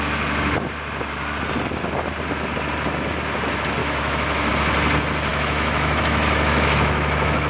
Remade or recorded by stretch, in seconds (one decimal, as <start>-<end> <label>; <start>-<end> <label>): 0.0-3.8 recorded; 3.8-4.5 remade; 4.5-5.3 recorded; 5.3-7.5 remade